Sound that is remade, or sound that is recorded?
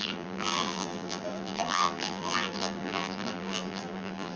remade